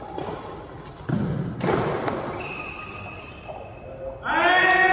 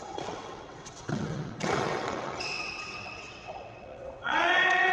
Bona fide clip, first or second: first